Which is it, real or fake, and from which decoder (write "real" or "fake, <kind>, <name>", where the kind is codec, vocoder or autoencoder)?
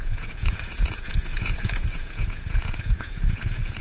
fake, vocoder, Vocos